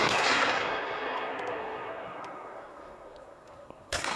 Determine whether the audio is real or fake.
fake